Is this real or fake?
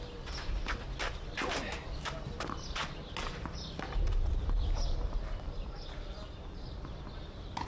real